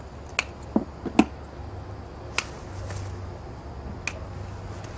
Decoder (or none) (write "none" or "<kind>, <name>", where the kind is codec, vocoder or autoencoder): none